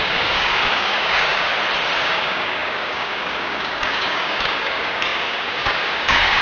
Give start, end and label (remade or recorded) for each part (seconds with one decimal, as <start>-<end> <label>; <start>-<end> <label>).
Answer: 0.0-1.5 remade; 1.5-2.0 recorded; 2.0-6.4 remade

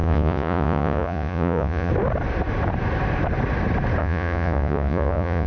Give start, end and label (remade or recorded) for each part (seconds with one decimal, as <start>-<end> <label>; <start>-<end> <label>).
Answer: 0.0-1.9 remade; 1.9-4.0 recorded; 4.0-5.5 remade

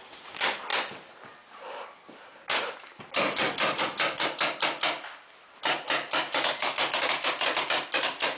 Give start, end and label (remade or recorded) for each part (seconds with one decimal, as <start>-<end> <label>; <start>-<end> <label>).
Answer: 0.0-8.4 recorded

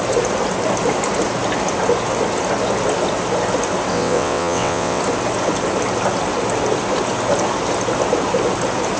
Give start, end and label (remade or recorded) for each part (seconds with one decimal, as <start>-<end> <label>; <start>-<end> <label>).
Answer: 0.0-3.9 recorded; 3.9-5.0 remade; 5.0-9.0 recorded

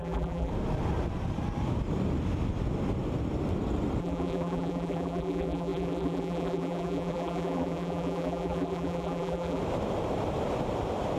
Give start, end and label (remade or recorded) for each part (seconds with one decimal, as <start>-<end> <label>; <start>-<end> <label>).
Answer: 0.0-0.5 remade; 0.5-4.0 recorded; 4.0-9.6 remade; 9.6-11.2 recorded

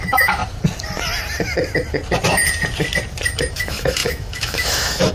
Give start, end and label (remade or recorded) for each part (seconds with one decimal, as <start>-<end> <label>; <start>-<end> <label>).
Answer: 0.0-0.4 remade; 0.4-3.5 recorded; 3.5-5.1 remade